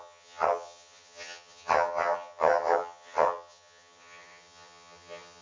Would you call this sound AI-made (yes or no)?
yes